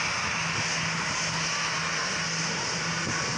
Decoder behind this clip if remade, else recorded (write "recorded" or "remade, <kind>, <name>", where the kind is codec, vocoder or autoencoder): recorded